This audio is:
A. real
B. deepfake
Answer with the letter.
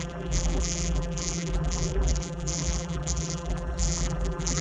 B